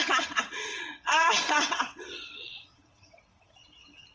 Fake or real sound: fake